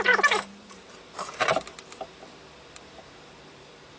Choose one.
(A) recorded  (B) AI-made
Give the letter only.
B